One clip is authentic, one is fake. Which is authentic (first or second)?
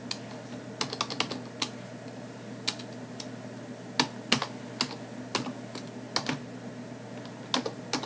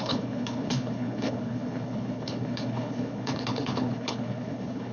first